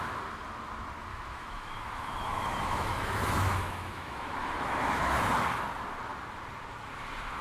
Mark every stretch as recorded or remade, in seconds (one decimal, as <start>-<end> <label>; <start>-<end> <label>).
0.0-1.1 recorded; 1.1-5.1 remade; 5.1-7.4 recorded